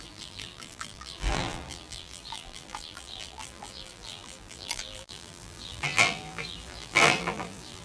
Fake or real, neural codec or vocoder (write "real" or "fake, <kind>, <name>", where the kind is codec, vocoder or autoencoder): fake, vocoder, BigVGAN v2